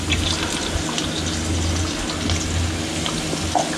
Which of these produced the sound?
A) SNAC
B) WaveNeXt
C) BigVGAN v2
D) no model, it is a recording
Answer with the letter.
D